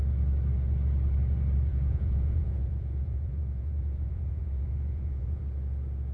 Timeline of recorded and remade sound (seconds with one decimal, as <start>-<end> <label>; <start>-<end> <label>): 0.0-1.7 recorded; 1.7-5.4 remade; 5.4-6.1 recorded